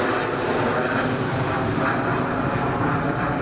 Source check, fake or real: real